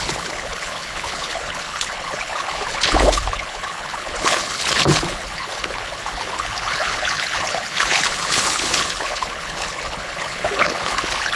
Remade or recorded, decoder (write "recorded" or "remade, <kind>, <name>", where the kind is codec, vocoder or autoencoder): remade, codec, HILCodec